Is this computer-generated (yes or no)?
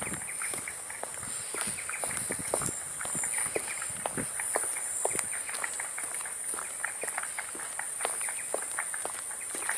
no